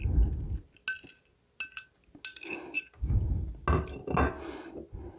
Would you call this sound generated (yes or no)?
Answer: no